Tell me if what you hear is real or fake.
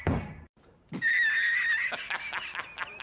real